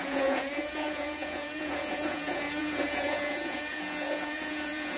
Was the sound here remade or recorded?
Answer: remade